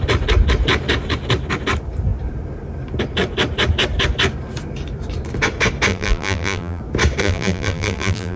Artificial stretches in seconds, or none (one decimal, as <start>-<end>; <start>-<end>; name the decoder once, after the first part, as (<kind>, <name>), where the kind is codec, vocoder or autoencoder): 5.9-6.8 (vocoder, BigVGAN v2); 7.2-8.4